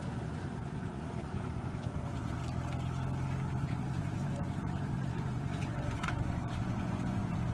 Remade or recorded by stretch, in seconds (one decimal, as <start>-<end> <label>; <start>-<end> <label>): 0.0-2.4 remade; 2.4-3.5 recorded; 3.5-7.5 remade